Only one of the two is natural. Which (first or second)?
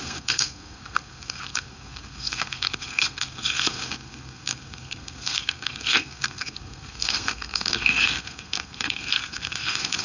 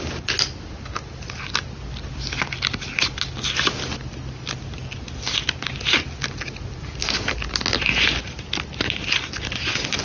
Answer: second